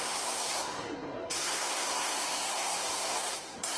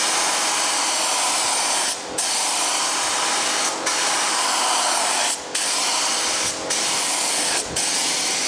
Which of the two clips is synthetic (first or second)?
first